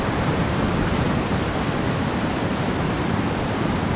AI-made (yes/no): yes